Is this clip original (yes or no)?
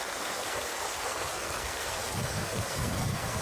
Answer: no